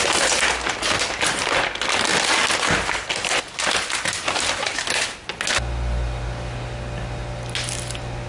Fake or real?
real